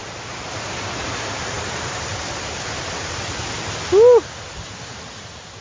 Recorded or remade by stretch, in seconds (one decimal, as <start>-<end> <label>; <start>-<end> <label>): 0.0-1.5 recorded; 1.5-2.1 remade; 2.1-4.8 recorded; 4.8-5.6 remade